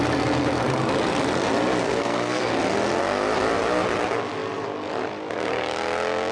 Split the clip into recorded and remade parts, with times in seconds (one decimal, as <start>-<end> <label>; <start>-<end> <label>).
0.0-1.8 recorded; 1.8-2.5 remade; 2.5-6.3 recorded